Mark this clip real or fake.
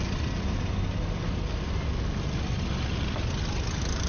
real